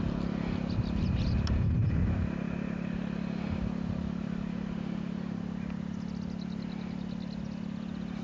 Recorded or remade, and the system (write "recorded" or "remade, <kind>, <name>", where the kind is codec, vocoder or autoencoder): recorded